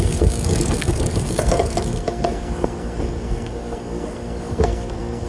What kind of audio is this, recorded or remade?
remade